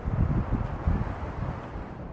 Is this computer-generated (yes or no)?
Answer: no